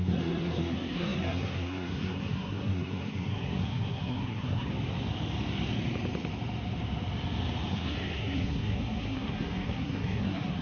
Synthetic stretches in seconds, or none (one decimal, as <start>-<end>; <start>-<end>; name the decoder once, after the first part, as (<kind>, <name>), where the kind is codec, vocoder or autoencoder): 0.0-4.7 (codec, SNAC); 7.7-10.6

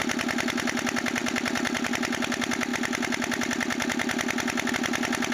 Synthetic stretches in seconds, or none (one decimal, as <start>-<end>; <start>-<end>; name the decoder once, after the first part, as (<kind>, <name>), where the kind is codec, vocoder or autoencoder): none

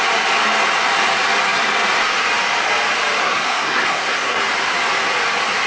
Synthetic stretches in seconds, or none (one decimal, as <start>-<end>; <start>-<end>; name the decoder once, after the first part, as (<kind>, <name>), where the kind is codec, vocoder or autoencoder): 3.2-4.4 (codec, SNAC)

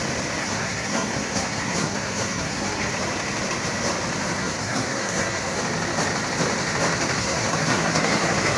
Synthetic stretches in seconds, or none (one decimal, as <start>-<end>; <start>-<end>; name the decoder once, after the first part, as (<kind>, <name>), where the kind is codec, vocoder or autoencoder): 0.4-2.9 (codec, SNAC); 4.4-5.6; 7.2-8.6